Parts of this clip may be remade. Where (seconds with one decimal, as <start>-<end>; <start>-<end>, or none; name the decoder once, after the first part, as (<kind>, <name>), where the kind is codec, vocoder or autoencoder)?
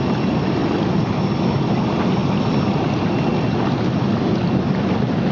none